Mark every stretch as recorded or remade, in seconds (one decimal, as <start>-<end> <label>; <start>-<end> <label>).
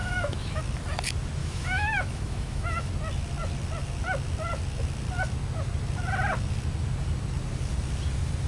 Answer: 0.0-0.6 remade; 0.6-1.4 recorded; 1.4-2.9 remade; 2.9-8.5 recorded